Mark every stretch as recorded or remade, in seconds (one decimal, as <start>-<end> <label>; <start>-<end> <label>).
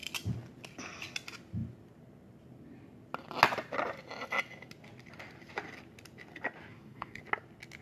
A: 0.0-6.7 recorded; 6.7-7.2 remade; 7.2-7.8 recorded